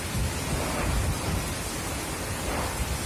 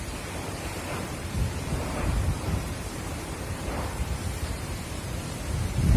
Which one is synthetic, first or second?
second